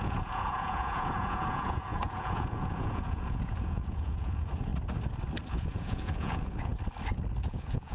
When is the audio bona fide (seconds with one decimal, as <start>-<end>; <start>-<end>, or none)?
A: 4.7-5.5; 6.7-7.4